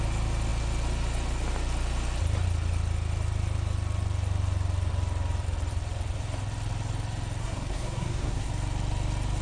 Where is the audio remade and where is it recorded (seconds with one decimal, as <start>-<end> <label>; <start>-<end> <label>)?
0.0-7.4 recorded; 7.4-8.5 remade; 8.5-9.4 recorded